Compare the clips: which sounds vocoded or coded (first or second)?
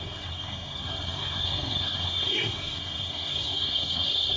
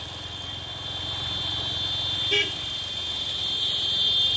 first